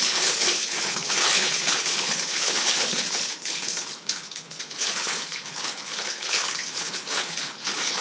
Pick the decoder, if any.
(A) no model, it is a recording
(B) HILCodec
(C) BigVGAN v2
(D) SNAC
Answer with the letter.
B